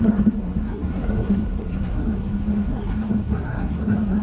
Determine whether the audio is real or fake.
fake